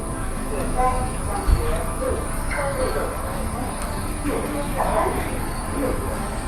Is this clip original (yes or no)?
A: no